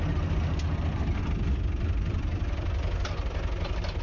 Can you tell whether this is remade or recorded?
recorded